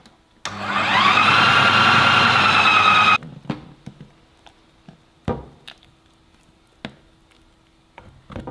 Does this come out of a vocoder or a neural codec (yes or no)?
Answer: no